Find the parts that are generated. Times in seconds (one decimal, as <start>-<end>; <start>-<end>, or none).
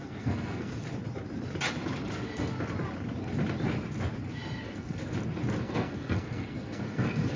0.0-0.8; 4.6-5.0; 5.6-7.4